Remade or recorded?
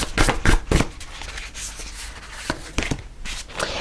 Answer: recorded